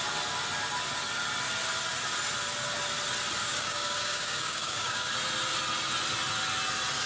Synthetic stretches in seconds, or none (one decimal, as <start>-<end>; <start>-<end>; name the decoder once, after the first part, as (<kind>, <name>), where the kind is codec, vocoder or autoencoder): 3.4-5.1 (codec, DAC)